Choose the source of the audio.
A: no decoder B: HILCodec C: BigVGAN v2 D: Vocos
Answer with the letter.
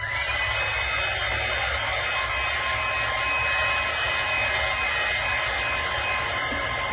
A